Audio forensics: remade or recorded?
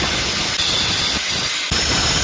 recorded